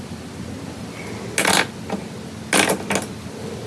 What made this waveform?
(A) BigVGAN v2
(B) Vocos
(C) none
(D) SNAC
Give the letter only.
C